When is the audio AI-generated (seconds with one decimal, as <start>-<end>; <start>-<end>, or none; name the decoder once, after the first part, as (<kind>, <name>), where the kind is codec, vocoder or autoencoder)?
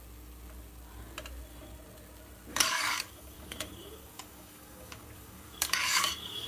2.5-6.5 (codec, DAC)